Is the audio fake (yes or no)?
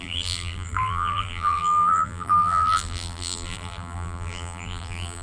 yes